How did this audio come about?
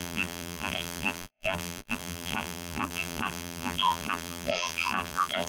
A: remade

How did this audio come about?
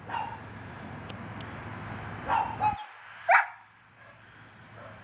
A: recorded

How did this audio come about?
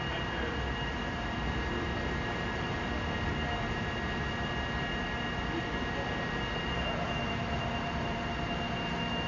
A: recorded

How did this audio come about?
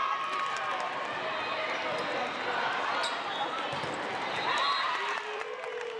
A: remade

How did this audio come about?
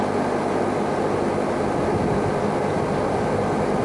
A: recorded